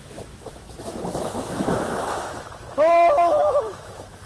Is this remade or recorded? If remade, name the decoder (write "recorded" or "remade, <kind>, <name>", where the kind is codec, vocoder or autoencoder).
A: remade, autoencoder, DAC-VAE